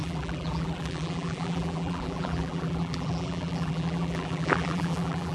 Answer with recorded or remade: remade